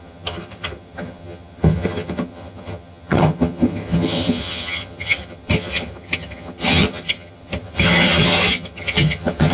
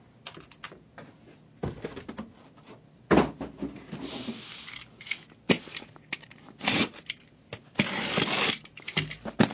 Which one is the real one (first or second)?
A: second